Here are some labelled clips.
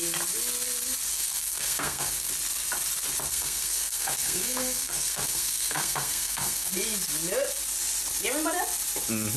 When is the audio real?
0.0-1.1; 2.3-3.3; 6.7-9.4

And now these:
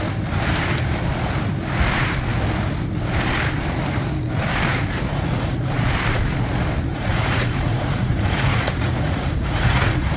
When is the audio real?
0.0-5.1; 5.7-6.9